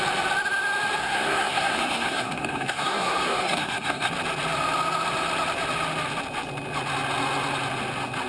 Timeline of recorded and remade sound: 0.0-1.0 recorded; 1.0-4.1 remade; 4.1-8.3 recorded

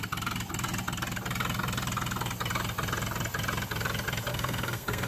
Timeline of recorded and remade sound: 0.0-4.3 recorded; 4.3-5.1 remade

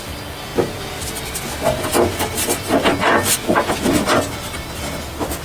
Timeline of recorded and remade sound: 0.0-5.4 recorded

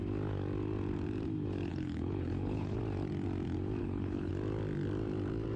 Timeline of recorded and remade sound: 0.0-1.7 recorded; 1.7-2.8 remade; 2.8-3.8 recorded; 3.8-4.3 remade; 4.3-5.6 recorded

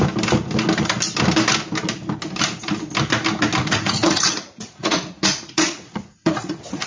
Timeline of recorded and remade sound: 0.0-3.6 recorded; 3.6-6.9 remade

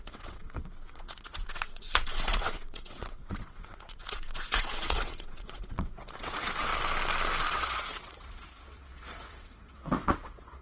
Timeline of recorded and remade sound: 0.0-6.7 remade; 6.7-7.5 recorded; 7.5-10.6 remade

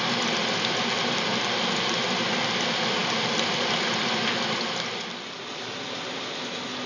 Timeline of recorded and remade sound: 0.0-6.9 recorded